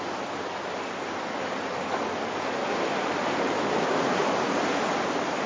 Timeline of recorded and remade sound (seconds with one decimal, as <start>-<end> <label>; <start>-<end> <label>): 0.0-5.5 recorded